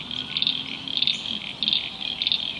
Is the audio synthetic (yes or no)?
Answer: no